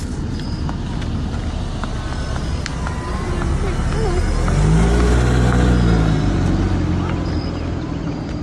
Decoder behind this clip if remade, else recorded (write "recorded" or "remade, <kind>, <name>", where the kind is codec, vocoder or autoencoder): recorded